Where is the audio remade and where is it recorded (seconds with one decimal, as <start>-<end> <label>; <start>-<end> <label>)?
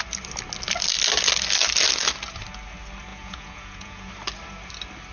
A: 0.0-3.1 recorded; 3.1-4.1 remade; 4.1-5.1 recorded